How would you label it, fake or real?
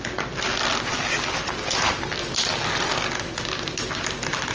real